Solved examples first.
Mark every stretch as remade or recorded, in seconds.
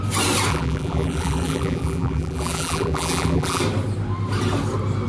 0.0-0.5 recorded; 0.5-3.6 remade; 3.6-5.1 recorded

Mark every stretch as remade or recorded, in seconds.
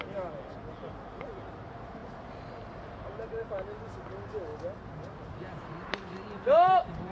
0.0-7.1 recorded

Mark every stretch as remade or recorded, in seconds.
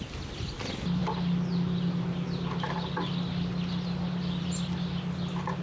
0.0-5.6 recorded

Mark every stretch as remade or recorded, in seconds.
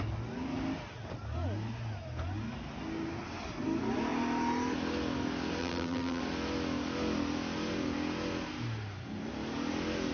0.0-5.6 recorded; 5.6-6.2 remade; 6.2-10.1 recorded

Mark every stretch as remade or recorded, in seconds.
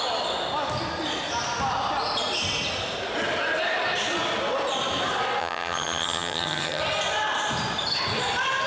0.0-5.4 recorded; 5.4-6.8 remade; 6.8-8.7 recorded